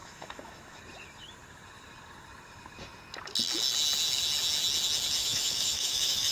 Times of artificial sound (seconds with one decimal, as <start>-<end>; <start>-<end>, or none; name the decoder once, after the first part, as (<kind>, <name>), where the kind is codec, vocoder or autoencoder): 0.0-0.8 (autoencoder, DAC-VAE); 5.2-6.3